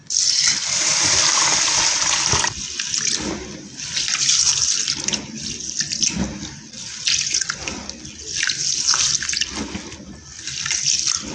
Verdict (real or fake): real